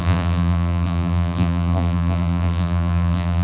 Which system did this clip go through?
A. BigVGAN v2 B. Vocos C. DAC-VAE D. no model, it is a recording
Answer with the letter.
A